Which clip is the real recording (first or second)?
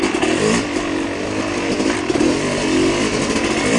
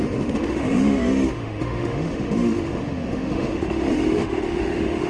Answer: first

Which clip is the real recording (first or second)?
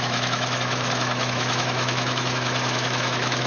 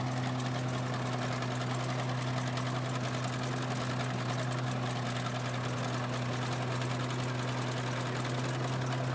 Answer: second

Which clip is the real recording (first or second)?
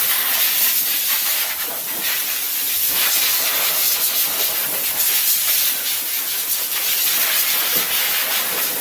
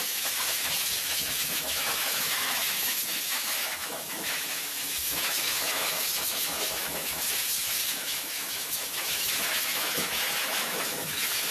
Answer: first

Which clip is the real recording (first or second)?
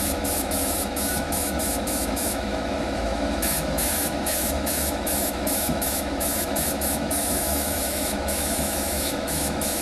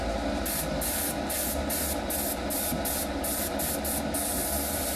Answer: second